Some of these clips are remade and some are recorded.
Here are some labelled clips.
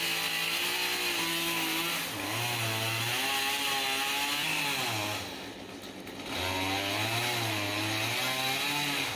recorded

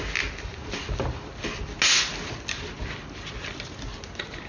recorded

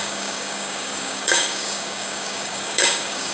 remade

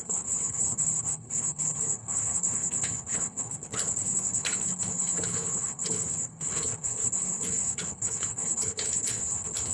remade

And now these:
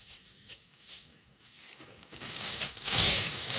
remade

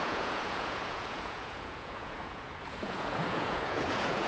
remade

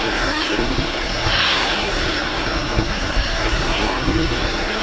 remade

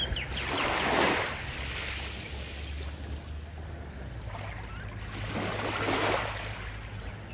recorded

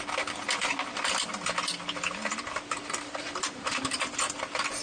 recorded